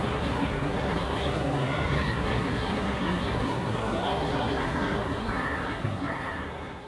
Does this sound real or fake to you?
fake